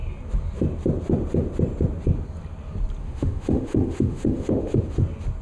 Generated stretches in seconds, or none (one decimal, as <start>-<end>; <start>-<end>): 3.0-4.8